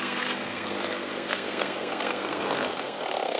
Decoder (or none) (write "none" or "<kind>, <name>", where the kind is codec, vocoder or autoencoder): codec, SNAC